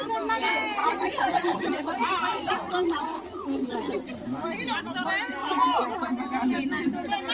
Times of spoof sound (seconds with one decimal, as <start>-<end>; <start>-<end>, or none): 0.8-3.9